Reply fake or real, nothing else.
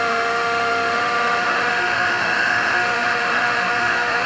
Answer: fake